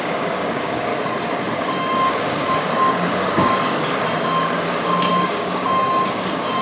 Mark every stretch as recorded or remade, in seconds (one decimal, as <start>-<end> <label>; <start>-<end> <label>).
0.0-0.9 remade; 0.9-1.5 recorded; 1.5-6.6 remade